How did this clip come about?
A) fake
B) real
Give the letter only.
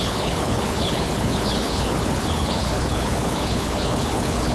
A